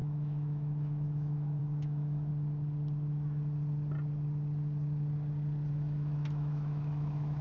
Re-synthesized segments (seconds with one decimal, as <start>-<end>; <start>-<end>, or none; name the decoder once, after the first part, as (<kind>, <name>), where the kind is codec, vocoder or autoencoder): 0.0-2.3 (autoencoder, DAC-VAE); 5.7-7.4